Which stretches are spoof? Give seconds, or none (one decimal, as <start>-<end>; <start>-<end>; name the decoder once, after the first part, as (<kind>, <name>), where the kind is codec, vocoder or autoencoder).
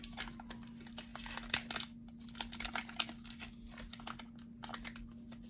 none